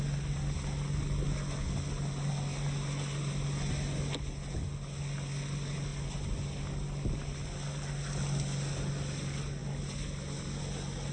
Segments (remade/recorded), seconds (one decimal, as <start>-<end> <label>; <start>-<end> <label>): 0.0-11.1 recorded